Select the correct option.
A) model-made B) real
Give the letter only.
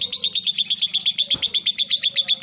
B